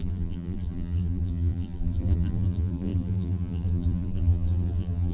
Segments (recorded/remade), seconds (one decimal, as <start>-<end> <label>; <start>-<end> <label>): 0.0-5.1 remade